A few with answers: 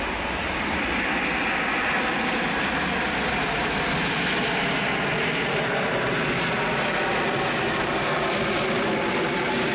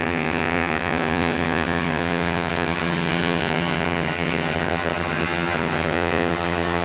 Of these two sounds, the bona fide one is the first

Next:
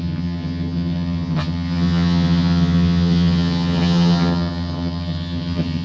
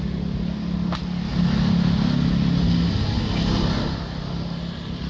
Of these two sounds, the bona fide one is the second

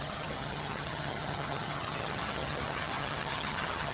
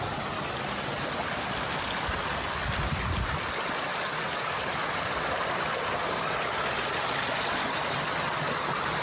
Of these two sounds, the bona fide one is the second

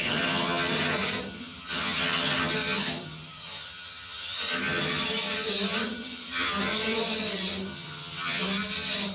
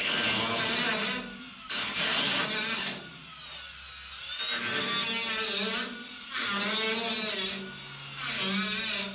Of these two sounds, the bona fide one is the second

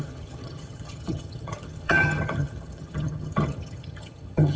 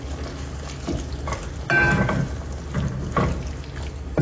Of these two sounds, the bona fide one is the second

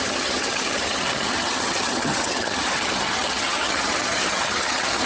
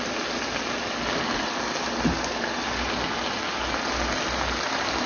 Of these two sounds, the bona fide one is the second